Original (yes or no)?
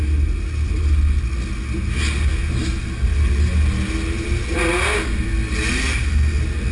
yes